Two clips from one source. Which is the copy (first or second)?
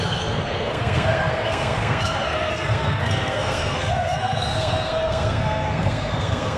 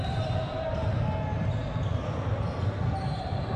first